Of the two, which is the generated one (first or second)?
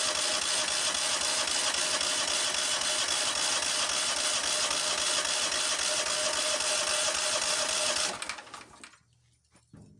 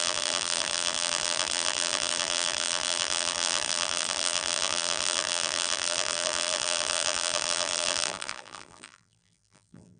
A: second